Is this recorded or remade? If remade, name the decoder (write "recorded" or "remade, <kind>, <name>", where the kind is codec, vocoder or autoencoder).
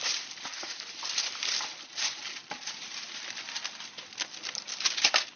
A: recorded